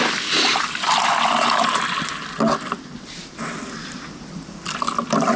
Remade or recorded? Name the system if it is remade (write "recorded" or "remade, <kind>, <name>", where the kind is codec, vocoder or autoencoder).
recorded